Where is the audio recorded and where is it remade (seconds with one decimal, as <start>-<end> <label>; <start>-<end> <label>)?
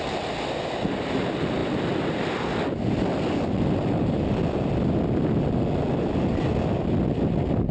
0.0-7.7 recorded